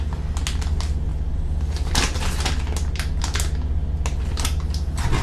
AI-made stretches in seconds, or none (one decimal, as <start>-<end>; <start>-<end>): none